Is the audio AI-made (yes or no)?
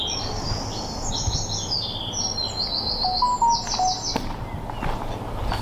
no